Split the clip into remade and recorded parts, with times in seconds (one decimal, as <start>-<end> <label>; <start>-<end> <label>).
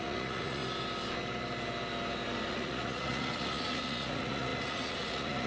0.0-0.6 remade; 0.6-2.5 recorded; 2.5-5.5 remade